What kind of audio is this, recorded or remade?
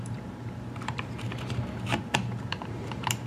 remade